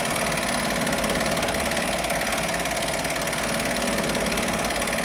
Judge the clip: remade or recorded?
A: recorded